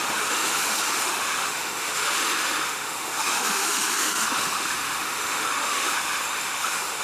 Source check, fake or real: fake